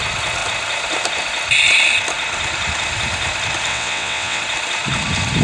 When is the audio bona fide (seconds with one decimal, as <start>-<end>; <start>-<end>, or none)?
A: 0.0-3.7; 4.4-5.4

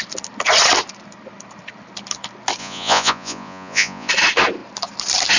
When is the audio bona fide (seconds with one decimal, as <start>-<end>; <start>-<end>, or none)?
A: 0.0-2.6; 4.1-5.4

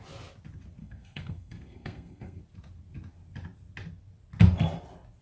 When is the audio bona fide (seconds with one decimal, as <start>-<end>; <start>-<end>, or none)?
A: 0.0-0.8; 2.4-5.2

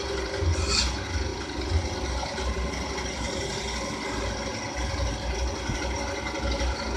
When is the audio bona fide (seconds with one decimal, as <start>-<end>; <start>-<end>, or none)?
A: 0.0-7.0

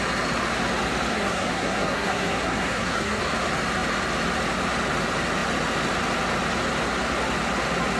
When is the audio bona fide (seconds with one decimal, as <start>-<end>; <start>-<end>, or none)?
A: 0.0-1.1; 3.2-8.0

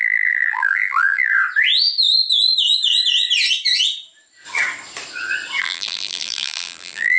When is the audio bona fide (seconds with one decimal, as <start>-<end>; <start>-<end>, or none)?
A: 1.3-5.6

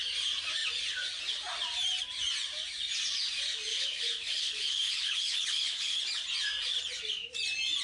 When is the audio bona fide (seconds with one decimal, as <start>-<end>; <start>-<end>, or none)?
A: 0.0-3.7; 6.0-7.8